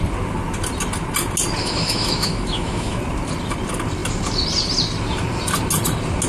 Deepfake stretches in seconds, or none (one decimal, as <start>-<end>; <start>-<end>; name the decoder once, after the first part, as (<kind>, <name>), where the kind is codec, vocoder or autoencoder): 1.6-3.0 (autoencoder, DAC-VAE)